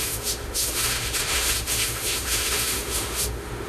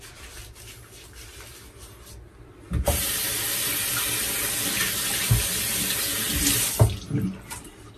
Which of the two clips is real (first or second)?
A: second